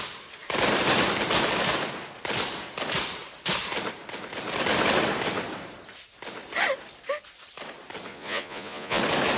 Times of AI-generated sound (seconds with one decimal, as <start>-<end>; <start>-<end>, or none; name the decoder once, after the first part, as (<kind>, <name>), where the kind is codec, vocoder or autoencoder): 8.1-9.0 (vocoder, Vocos)